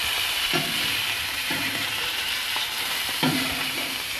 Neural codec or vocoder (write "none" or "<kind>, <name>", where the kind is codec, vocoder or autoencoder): vocoder, BigVGAN v2